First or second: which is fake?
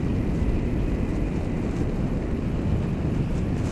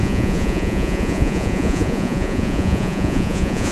second